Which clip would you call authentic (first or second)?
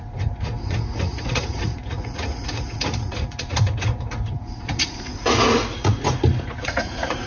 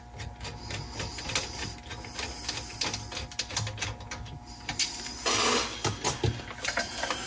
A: second